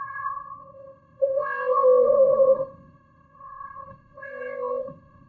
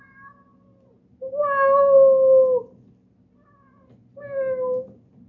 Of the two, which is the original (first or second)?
second